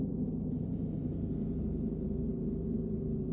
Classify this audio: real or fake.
fake